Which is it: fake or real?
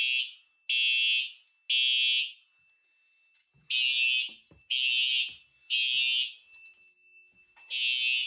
real